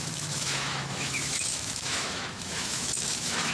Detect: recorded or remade remade